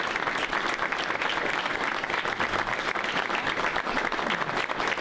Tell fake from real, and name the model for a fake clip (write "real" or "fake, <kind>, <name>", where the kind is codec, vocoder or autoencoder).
real